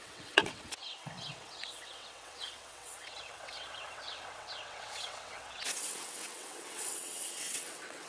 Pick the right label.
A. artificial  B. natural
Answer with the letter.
A